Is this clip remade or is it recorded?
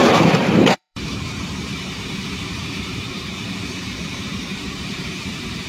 remade